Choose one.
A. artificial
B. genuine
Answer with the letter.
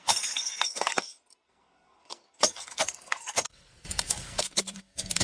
A